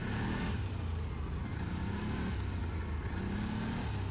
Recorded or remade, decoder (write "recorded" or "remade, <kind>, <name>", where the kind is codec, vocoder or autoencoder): recorded